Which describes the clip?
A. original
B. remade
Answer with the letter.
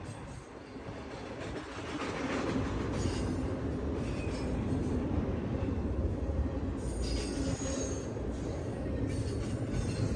A